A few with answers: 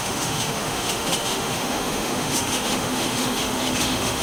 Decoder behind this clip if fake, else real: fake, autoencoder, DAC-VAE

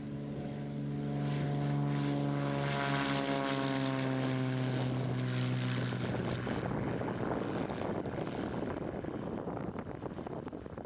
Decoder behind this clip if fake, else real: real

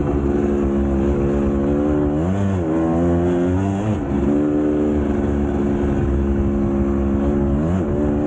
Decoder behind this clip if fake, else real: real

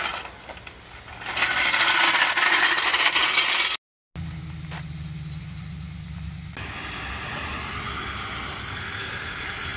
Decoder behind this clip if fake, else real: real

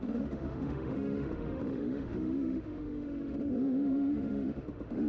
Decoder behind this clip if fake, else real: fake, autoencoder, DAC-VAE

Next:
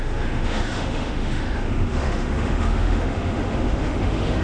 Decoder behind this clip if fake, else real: fake, autoencoder, DAC-VAE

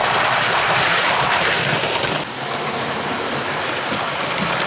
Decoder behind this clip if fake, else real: real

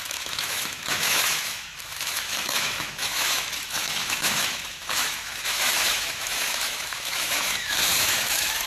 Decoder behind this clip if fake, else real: fake, autoencoder, DAC-VAE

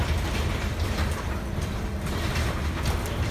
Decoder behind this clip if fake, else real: real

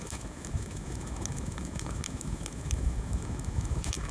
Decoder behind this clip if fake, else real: fake, autoencoder, DAC-VAE